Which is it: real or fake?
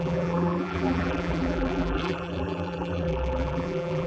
fake